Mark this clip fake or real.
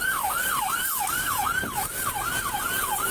real